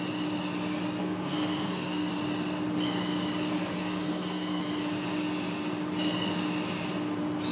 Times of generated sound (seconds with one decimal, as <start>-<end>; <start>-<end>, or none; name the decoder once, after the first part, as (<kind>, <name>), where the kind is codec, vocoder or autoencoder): 1.0-2.1 (codec, SNAC); 3.8-4.6